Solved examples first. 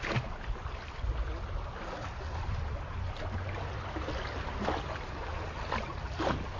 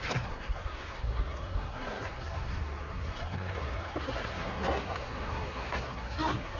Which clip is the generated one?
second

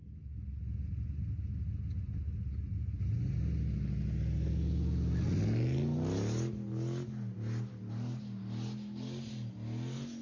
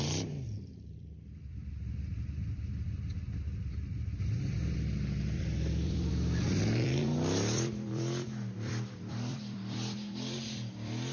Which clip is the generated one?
second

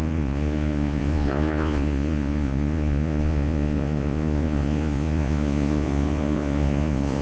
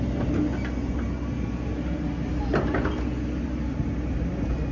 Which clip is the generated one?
first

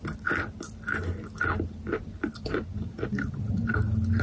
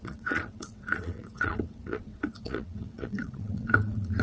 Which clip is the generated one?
second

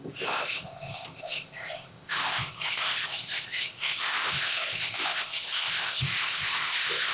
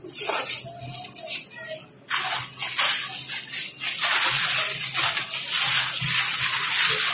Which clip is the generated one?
first